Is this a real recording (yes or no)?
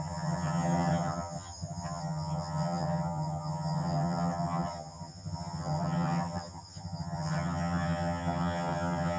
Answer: no